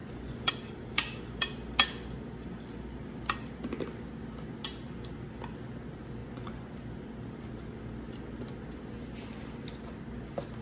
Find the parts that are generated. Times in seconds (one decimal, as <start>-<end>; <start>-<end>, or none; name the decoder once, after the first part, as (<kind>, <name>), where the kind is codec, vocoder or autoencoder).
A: 0.0-0.5 (vocoder, Vocos); 6.2-6.7